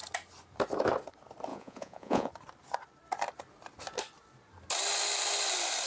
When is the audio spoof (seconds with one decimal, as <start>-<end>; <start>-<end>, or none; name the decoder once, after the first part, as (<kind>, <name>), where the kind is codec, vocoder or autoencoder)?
1.5-2.3 (vocoder, Vocos)